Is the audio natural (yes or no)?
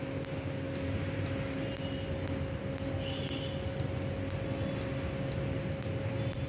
yes